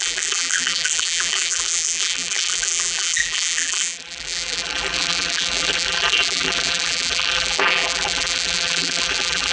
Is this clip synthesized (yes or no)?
yes